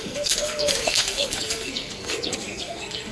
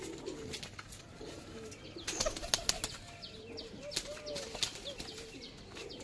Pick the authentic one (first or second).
second